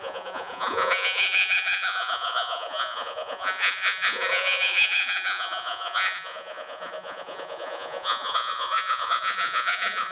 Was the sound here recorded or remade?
remade